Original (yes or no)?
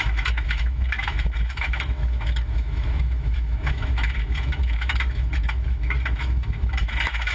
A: no